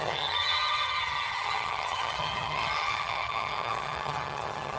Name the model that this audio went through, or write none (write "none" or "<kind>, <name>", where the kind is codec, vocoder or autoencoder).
vocoder, HiFi-GAN